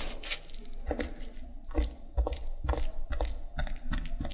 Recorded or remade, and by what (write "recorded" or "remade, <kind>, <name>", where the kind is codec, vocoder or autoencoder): recorded